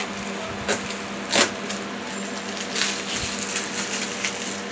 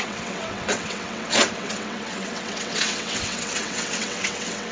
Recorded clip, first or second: first